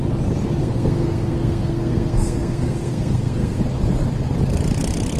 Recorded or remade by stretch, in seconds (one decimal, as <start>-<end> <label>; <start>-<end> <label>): 0.0-0.6 recorded; 0.6-3.6 remade; 3.6-5.2 recorded